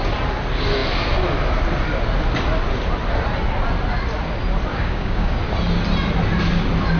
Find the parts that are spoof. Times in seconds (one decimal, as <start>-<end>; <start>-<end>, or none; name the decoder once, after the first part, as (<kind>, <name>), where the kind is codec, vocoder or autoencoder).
4.7-5.4 (codec, DAC)